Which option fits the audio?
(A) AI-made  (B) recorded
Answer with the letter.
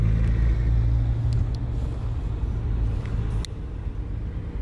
B